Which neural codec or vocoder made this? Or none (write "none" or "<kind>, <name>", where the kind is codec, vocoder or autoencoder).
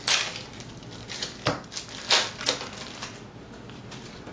none